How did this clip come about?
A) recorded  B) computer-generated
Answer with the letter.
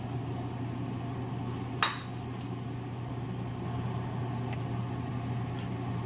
A